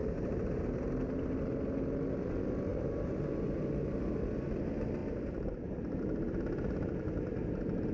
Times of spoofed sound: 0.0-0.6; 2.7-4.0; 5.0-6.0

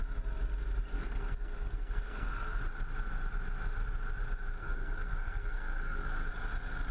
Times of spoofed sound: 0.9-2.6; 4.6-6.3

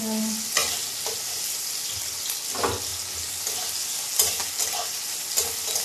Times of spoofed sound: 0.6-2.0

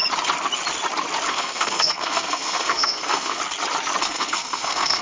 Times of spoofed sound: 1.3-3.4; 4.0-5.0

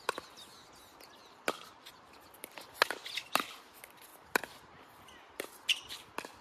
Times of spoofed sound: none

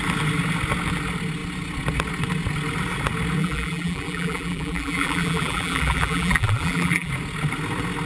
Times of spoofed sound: 3.4-7.1

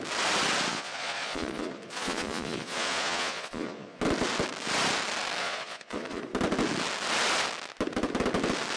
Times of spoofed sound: 0.7-4.0; 5.4-6.2

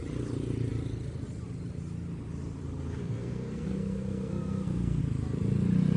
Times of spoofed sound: 3.0-5.0